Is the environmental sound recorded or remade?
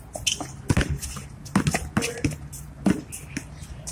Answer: recorded